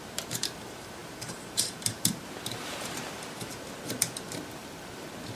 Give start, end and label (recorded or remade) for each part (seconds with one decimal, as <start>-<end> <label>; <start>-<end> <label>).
0.0-4.6 remade; 4.6-5.4 recorded